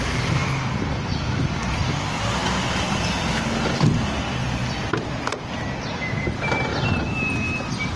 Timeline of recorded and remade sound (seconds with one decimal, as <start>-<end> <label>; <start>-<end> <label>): 0.0-8.0 recorded